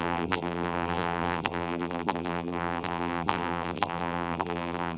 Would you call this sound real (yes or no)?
no